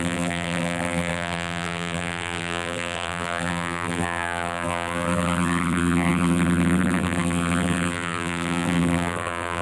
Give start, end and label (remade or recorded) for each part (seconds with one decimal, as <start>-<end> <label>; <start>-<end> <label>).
0.0-9.6 remade